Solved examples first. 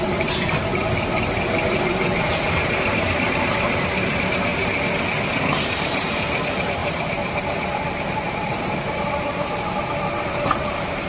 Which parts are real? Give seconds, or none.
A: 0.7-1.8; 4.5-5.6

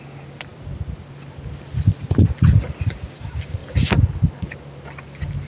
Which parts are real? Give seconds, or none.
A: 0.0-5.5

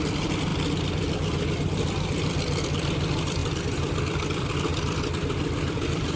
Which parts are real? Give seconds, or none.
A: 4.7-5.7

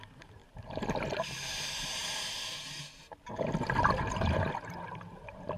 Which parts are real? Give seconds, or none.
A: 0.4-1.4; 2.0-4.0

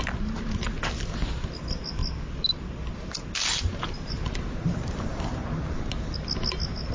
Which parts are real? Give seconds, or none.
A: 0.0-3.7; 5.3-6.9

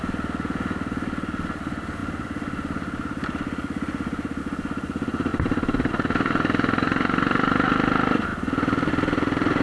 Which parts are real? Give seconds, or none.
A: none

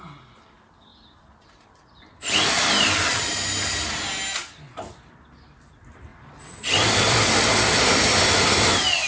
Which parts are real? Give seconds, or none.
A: 0.0-0.9; 3.3-6.1; 7.5-9.1